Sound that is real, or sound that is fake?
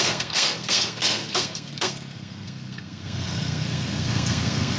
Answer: fake